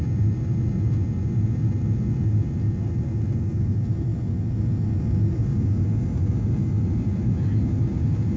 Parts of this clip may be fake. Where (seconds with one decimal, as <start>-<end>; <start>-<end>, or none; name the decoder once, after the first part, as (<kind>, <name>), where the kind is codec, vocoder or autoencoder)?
none